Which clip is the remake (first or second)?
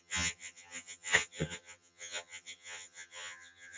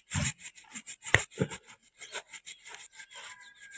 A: first